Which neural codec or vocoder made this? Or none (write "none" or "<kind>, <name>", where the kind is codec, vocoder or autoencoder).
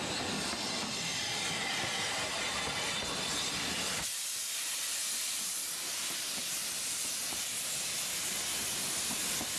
none